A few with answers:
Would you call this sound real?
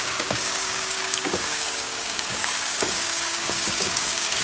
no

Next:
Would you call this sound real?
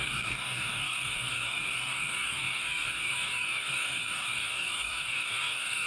no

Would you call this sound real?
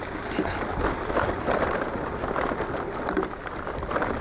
yes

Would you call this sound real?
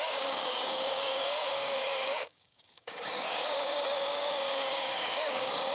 no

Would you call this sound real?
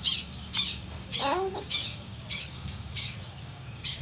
no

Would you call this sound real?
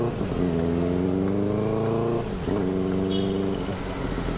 yes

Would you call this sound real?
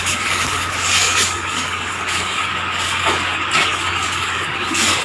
no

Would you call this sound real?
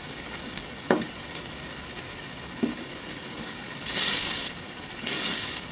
no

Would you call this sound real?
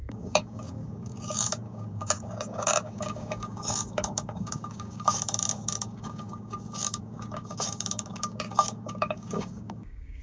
no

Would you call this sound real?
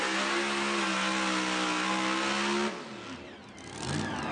yes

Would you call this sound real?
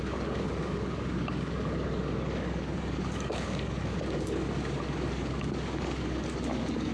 no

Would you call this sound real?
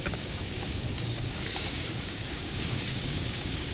no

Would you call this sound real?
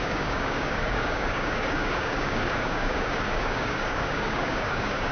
no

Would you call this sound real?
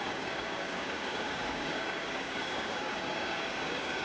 no